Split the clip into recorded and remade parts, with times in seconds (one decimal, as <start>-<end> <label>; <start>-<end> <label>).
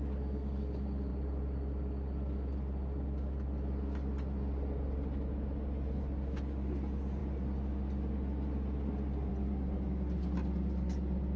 0.0-11.4 recorded